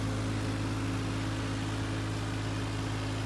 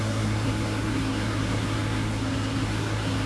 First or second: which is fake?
second